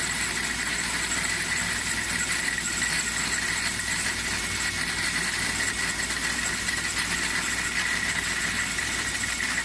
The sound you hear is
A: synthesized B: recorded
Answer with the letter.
B